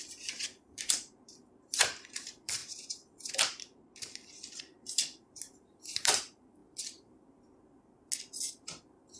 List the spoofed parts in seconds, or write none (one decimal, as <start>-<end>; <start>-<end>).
0.0-6.6; 8.5-9.2